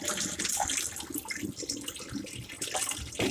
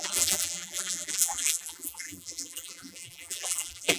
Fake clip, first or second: second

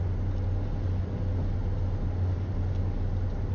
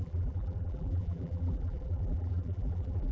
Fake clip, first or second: second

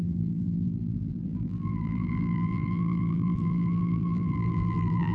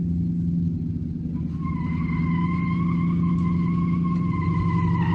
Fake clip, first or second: first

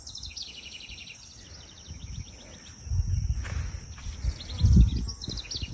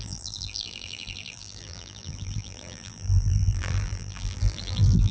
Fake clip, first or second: second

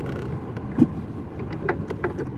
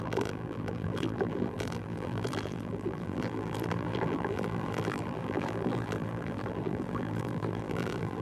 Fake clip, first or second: second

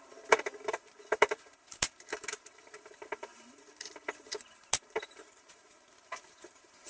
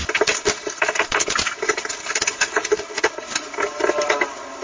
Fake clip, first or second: first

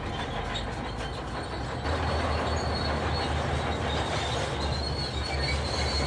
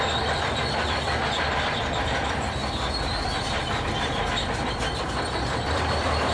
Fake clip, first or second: second